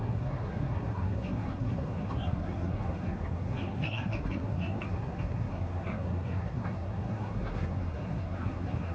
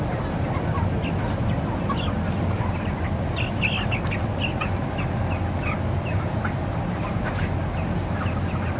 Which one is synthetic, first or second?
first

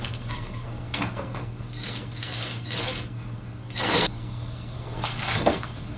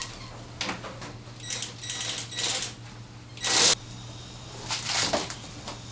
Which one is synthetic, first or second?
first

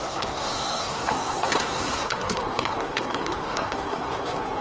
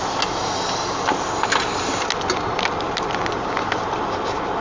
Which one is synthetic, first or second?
first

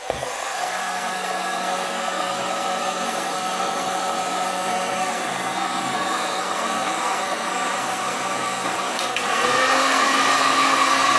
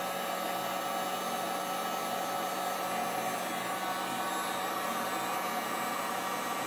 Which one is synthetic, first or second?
first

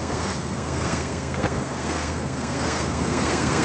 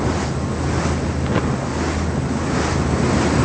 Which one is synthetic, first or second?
first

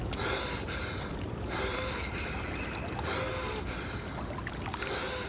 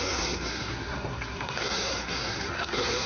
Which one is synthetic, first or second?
second